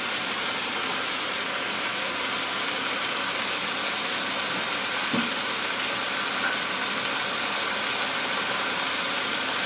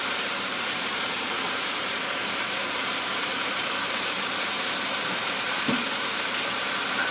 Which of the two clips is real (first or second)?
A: first